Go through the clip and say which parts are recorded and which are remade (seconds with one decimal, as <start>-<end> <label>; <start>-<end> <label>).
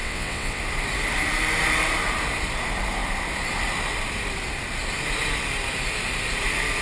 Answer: 0.0-0.6 remade; 0.6-6.8 recorded